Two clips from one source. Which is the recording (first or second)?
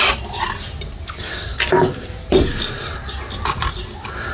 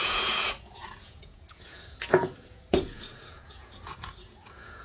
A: first